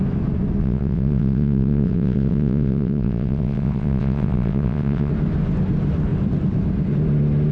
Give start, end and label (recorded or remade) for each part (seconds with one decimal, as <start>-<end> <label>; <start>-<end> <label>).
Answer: 0.0-0.6 recorded; 0.6-5.1 remade; 5.1-7.5 recorded